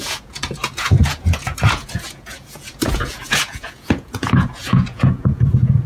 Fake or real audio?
fake